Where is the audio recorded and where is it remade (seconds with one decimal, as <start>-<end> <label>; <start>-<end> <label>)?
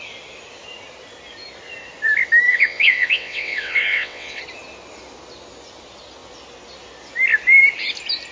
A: 0.0-2.5 recorded; 2.5-4.4 remade; 4.4-8.3 recorded